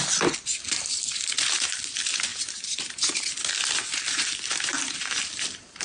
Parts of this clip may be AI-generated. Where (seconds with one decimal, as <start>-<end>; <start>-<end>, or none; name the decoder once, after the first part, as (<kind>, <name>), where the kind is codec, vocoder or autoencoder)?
2.3-3.0 (vocoder, BigVGAN v2)